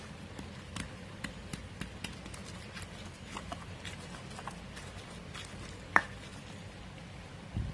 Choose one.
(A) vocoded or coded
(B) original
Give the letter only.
B